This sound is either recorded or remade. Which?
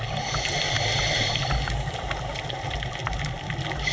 recorded